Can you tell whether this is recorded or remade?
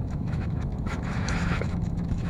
remade